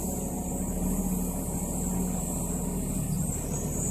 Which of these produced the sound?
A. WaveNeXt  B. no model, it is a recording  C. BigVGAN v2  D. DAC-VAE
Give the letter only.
B